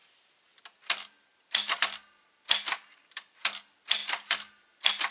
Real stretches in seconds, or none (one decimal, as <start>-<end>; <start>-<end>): 0.0-5.1